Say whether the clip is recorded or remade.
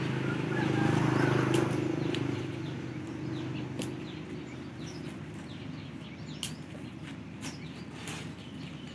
recorded